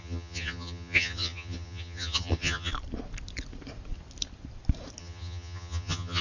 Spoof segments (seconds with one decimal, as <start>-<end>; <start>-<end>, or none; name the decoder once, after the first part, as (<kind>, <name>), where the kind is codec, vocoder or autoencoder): 0.0-2.7 (vocoder, HiFi-GAN); 5.0-6.2